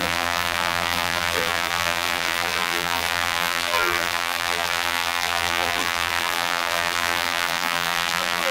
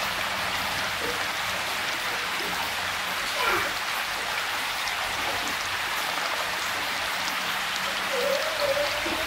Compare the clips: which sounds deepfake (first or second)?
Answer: first